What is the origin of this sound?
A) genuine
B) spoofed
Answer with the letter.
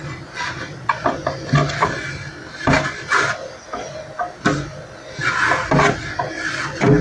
A